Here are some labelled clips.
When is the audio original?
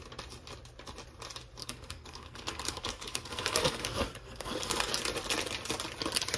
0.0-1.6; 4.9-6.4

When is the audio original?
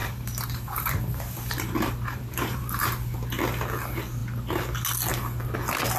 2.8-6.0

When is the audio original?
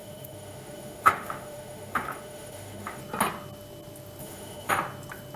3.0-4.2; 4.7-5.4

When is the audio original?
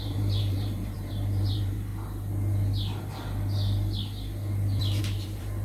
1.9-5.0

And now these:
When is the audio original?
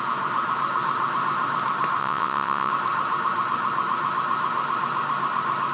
0.0-2.0; 2.7-5.7